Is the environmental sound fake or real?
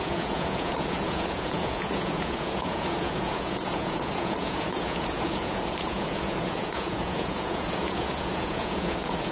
fake